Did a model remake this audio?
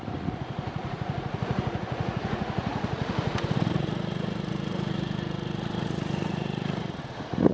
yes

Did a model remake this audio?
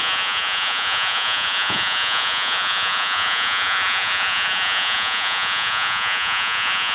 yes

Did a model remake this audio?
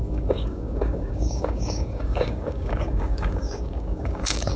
yes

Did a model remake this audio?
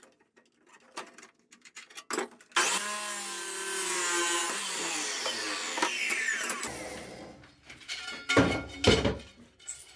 no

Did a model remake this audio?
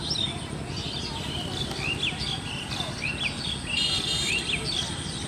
no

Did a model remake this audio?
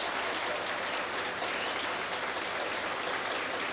no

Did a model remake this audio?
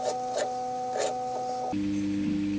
no